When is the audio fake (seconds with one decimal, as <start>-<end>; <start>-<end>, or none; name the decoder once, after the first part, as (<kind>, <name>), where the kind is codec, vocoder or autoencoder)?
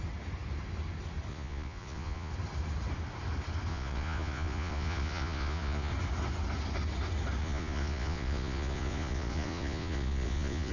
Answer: 1.3-2.3 (vocoder, Vocos); 3.7-5.9; 7.4-10.7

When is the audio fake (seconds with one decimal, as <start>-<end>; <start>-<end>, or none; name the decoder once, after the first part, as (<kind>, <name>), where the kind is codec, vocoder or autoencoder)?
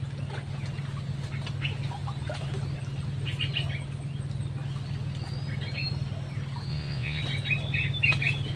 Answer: 6.7-7.2 (vocoder, Vocos)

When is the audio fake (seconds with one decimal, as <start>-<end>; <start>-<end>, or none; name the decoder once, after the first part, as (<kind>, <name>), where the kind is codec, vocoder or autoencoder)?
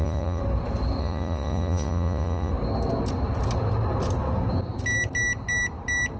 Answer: 0.0-0.4 (vocoder, Vocos); 1.0-2.5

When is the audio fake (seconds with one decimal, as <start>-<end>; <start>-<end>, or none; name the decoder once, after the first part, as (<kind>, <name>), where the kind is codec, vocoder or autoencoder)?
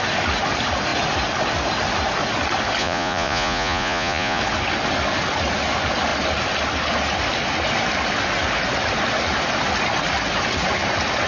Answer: 2.8-4.4 (vocoder, Vocos)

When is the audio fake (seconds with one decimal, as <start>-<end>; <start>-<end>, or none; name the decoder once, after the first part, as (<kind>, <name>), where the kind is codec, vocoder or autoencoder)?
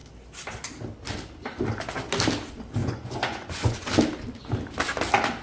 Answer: 2.8-3.9 (vocoder, Vocos)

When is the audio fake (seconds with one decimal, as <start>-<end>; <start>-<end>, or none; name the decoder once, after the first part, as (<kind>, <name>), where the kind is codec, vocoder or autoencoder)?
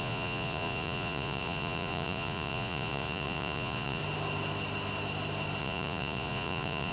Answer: 0.0-4.0 (vocoder, Vocos); 5.6-6.9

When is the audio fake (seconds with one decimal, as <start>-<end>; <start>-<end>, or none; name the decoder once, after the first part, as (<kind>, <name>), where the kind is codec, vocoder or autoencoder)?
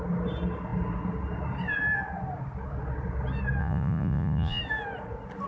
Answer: 3.6-4.6 (vocoder, Vocos)